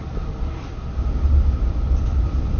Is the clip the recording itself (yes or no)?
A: yes